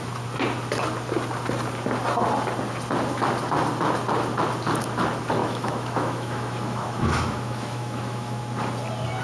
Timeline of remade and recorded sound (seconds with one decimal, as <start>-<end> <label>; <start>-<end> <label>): 0.0-5.4 recorded; 5.4-8.4 remade; 8.4-9.2 recorded